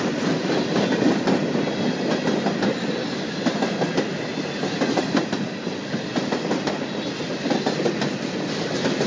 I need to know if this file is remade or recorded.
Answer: recorded